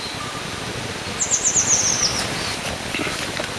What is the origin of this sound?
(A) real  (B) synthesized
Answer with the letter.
A